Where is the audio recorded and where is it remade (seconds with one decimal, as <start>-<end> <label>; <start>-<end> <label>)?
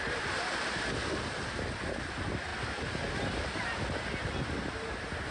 0.0-5.3 recorded